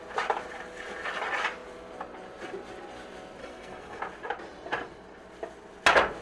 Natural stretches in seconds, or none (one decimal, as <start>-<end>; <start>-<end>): 0.0-3.4; 4.0-6.2